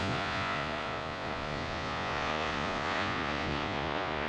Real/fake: fake